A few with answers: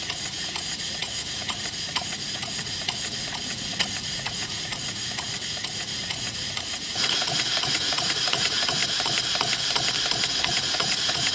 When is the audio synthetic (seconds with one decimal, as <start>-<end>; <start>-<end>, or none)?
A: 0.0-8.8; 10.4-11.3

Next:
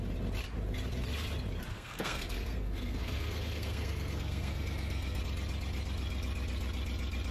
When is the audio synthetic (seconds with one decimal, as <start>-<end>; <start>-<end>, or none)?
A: 1.7-5.2

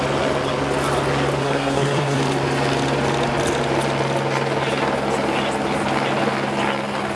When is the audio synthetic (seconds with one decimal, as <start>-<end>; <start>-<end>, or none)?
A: 1.4-2.2

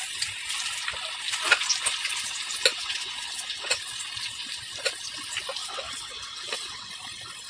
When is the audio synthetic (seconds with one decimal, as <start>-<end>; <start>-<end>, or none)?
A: 2.7-3.8; 5.6-6.9

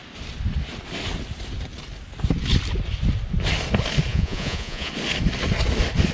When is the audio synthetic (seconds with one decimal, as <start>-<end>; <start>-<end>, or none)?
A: 4.1-4.9

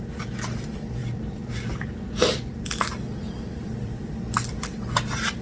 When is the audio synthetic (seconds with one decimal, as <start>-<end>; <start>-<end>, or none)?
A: 1.0-4.2

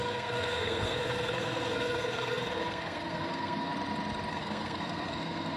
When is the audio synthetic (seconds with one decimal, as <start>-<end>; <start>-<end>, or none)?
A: 0.0-3.7; 4.3-5.6